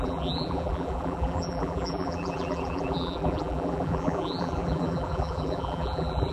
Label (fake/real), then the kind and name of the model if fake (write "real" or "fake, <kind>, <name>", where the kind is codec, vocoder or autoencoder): fake, vocoder, BigVGAN v2